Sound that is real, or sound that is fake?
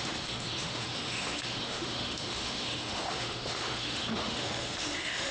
fake